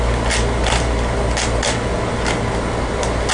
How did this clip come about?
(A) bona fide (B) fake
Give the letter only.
A